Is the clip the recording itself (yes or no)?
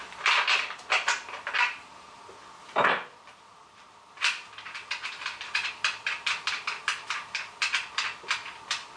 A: yes